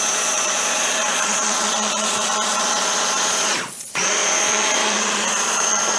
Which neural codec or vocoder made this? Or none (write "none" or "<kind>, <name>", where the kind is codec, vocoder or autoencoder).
vocoder, Vocos